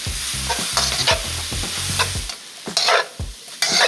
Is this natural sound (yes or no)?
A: yes